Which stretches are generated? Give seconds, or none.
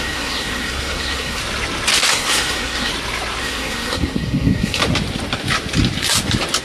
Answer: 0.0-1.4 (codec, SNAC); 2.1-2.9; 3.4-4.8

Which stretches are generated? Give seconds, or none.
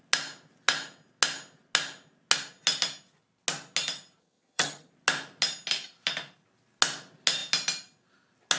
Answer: 4.2-4.9 (vocoder, HiFi-GAN)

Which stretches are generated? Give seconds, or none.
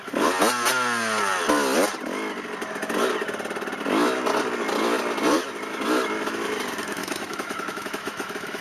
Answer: 7.0-8.6 (autoencoder, DAC-VAE)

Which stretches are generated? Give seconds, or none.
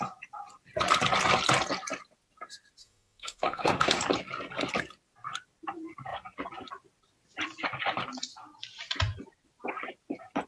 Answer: 2.8-4.0 (autoencoder, DAC-VAE)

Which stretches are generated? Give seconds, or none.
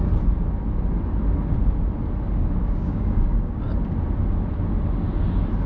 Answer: 2.6-3.6 (codec, DAC)